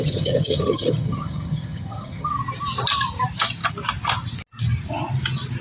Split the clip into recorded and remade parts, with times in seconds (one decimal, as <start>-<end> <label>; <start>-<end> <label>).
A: 0.0-2.3 remade; 2.3-5.6 recorded